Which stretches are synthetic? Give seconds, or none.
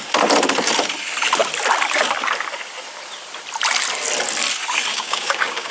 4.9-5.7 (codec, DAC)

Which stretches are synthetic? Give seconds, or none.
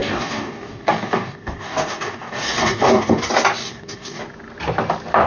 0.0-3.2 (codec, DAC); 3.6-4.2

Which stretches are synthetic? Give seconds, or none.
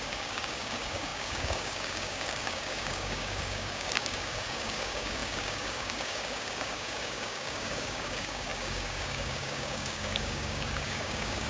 0.0-11.5 (codec, DAC)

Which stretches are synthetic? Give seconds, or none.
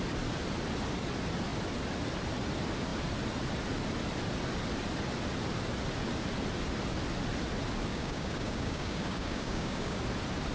7.9-10.0 (codec, DAC)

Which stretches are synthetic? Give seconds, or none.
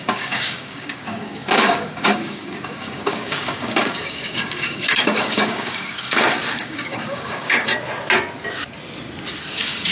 0.0-7.7 (codec, DAC); 9.5-9.9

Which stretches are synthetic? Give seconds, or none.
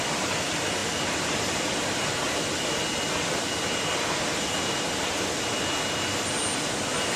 none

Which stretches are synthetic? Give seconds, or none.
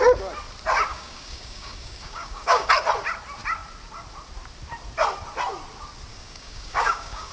0.9-2.7 (codec, DAC); 6.1-7.3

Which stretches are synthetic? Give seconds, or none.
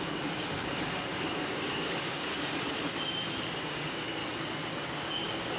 0.0-2.3 (codec, DAC); 3.4-4.2; 4.7-5.6